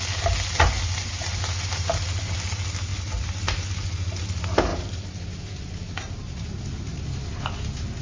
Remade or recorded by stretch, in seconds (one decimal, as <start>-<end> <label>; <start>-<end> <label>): 0.0-2.9 recorded; 2.9-3.7 remade; 3.7-8.0 recorded